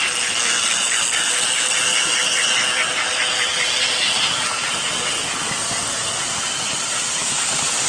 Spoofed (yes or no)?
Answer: no